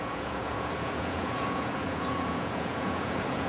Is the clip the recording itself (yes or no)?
no